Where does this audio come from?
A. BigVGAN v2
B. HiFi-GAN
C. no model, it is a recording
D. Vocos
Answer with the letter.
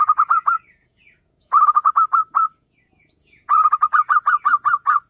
D